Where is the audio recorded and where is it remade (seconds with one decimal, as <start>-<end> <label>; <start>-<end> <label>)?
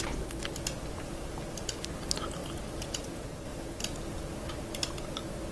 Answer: 0.0-5.5 recorded